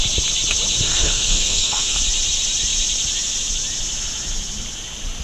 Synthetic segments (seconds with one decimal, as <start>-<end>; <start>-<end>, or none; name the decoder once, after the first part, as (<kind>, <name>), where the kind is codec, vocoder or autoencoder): 0.9-2.0 (codec, SNAC)